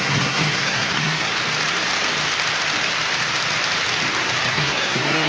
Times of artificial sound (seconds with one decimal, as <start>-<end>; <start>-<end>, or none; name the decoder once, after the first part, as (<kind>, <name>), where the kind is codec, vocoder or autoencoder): 0.0-1.3 (codec, SNAC); 4.5-5.3